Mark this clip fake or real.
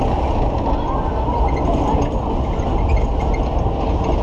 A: real